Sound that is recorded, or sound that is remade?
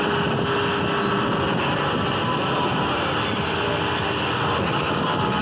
recorded